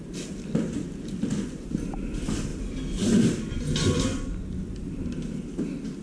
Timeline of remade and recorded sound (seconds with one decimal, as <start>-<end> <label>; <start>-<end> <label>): 0.0-6.0 recorded

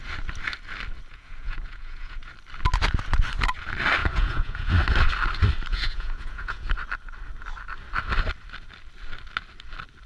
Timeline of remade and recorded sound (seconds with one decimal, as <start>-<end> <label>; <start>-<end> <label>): 0.0-1.1 recorded; 1.1-2.3 remade; 2.3-4.0 recorded; 4.0-4.7 remade; 4.7-5.7 recorded; 5.7-6.7 remade; 6.7-10.1 recorded